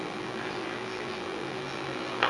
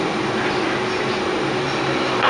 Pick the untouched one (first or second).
second